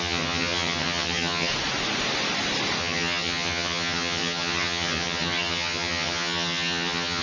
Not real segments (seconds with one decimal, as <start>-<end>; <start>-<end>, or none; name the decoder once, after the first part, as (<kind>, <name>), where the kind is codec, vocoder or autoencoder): 0.0-1.5 (vocoder, HiFi-GAN); 2.8-7.2